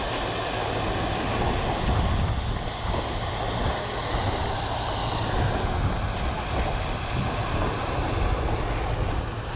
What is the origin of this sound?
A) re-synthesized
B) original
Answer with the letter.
B